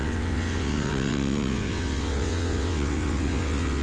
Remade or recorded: remade